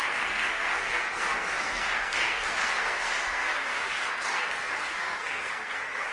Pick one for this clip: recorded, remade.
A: remade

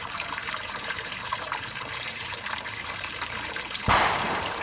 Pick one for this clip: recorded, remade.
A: remade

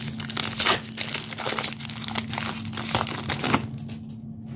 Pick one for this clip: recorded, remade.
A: recorded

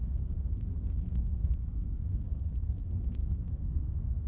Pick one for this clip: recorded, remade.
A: remade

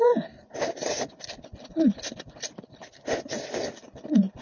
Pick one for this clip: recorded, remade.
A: recorded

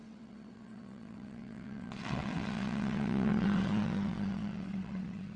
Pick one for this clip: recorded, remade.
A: remade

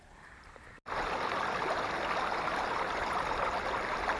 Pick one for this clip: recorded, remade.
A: recorded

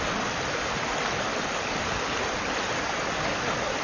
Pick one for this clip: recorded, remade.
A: recorded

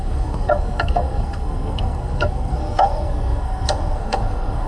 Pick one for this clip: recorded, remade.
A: remade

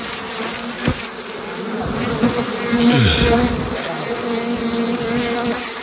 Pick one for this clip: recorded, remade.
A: recorded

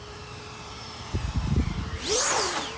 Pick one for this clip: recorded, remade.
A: remade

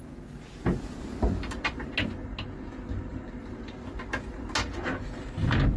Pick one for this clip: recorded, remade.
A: recorded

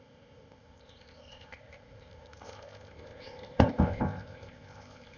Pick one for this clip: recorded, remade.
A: remade